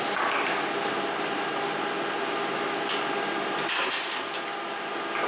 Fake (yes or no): no